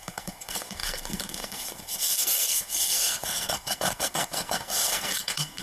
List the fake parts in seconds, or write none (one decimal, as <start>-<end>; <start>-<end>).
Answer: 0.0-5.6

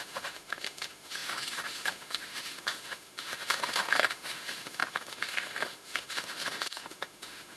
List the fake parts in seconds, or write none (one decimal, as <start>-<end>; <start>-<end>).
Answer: 0.0-7.6

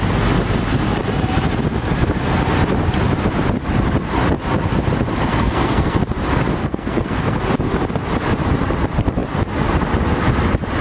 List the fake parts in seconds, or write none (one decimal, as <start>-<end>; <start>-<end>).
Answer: 5.3-6.0; 6.6-7.4

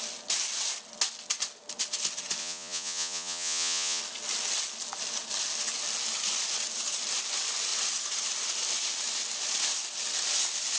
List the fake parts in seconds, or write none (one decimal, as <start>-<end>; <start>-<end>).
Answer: 2.4-4.0

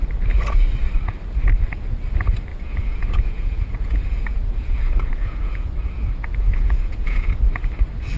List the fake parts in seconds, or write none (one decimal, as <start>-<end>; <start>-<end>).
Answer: 2.5-7.4

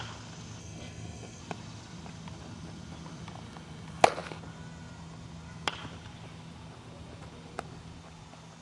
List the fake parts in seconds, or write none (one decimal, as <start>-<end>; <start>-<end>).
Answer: 0.6-1.4